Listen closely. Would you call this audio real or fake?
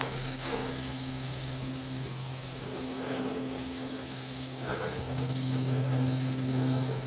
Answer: fake